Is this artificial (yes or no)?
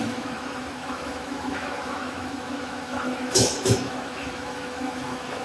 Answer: yes